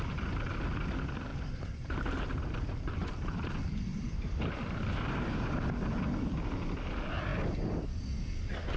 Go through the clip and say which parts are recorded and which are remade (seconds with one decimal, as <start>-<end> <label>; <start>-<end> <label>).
0.0-1.3 recorded; 1.3-2.5 remade; 2.5-3.0 recorded; 3.0-3.5 remade; 3.5-3.9 recorded; 3.9-4.8 remade; 4.8-8.8 recorded